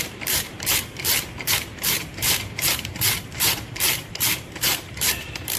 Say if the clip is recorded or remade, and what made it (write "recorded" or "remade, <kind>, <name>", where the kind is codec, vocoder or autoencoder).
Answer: remade, vocoder, BigVGAN v2